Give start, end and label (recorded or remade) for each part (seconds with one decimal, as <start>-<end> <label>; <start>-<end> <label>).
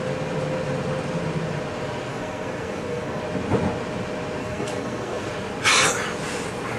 0.0-2.1 recorded; 2.1-3.2 remade; 3.2-4.4 recorded; 4.4-5.3 remade; 5.3-6.8 recorded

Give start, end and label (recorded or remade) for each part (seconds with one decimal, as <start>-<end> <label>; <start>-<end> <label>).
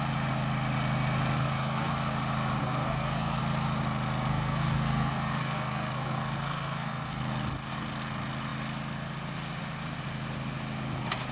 0.0-1.4 recorded; 1.4-1.9 remade; 1.9-2.6 recorded; 2.6-3.4 remade; 3.4-4.3 recorded; 4.3-7.2 remade; 7.2-11.3 recorded